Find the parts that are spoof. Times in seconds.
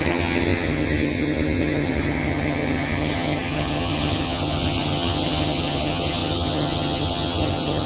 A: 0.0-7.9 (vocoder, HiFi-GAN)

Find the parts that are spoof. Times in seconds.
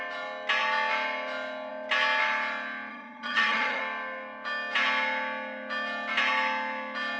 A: 2.9-3.8 (vocoder, HiFi-GAN)